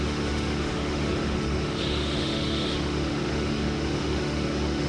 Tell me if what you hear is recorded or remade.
remade